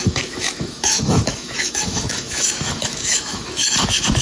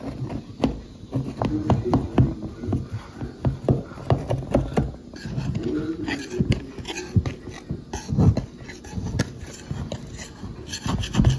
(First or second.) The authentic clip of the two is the second